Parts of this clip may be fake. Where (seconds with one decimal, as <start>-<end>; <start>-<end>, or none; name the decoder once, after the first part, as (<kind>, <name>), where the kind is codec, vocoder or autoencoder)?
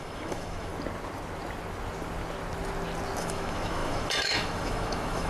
0.0-0.7 (autoencoder, DAC-VAE); 3.2-5.3